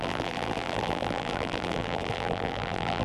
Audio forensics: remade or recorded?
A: remade